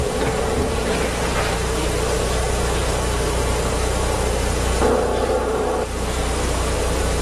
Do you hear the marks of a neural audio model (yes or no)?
yes